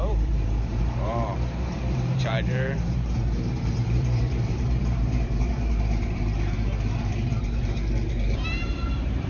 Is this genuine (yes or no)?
no